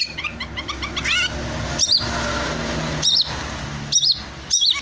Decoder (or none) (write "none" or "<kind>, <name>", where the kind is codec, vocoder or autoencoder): none